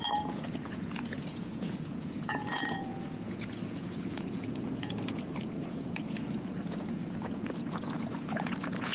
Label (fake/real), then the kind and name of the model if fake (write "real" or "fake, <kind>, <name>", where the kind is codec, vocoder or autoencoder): fake, vocoder, Vocos